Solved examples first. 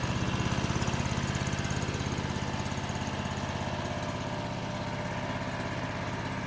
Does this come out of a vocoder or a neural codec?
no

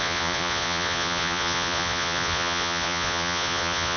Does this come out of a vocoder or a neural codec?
yes